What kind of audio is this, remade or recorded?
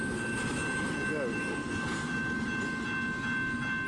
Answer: recorded